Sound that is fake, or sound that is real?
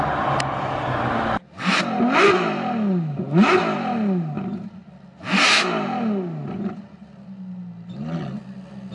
real